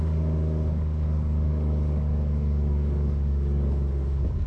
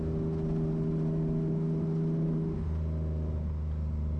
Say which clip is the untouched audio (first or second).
second